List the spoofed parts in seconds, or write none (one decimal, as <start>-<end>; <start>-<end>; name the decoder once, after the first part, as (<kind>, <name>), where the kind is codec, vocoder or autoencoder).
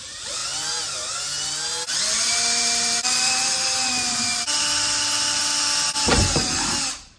0.0-0.4 (vocoder, BigVGAN v2); 2.0-5.4; 6.1-7.2